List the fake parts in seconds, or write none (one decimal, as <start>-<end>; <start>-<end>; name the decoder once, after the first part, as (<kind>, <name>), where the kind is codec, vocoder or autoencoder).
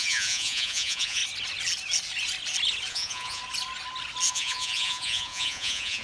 0.0-1.2 (vocoder, Vocos); 2.9-3.4; 4.3-6.0